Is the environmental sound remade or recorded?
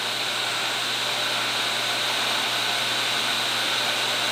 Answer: recorded